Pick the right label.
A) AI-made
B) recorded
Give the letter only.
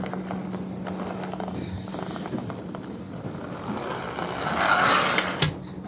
B